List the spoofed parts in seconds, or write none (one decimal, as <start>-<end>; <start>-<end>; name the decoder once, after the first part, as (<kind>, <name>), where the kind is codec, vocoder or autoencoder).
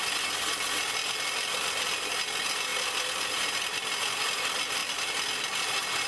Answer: none